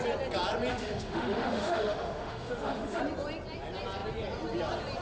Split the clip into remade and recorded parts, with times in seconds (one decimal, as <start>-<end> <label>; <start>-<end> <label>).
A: 0.0-0.7 recorded; 0.7-3.0 remade; 3.0-5.0 recorded